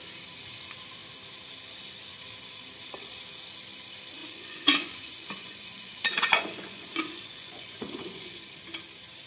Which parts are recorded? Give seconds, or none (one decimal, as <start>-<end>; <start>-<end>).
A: 0.0-4.2; 8.4-9.3

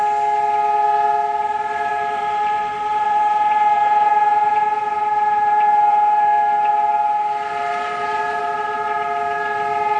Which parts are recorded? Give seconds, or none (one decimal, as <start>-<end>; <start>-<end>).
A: 0.0-1.9; 6.7-7.7; 8.4-10.0

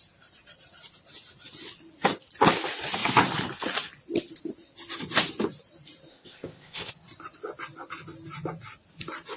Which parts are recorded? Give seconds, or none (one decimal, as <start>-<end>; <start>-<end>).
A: 0.0-6.1; 6.9-9.4

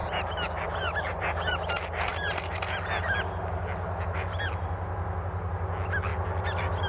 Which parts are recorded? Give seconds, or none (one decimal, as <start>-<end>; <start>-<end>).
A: 0.0-6.9

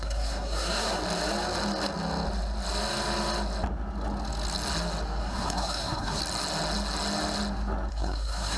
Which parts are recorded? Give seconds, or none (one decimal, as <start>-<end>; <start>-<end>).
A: 1.0-5.2; 6.2-7.9

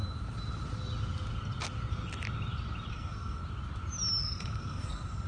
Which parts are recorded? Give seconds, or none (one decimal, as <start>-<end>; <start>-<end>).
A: 0.0-2.9; 3.4-4.2

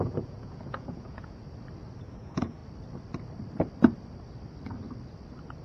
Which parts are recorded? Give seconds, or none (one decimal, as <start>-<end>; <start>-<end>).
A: 1.4-2.2; 2.6-5.6